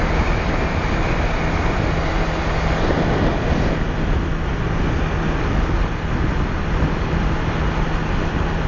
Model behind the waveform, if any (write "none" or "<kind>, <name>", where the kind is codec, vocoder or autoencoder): none